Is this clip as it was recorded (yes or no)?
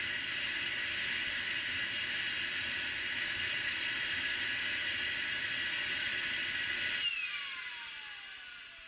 yes